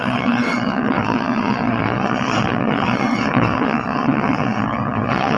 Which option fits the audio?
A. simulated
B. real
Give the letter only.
A